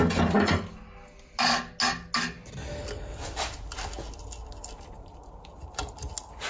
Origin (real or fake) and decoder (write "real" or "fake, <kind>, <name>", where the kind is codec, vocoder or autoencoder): real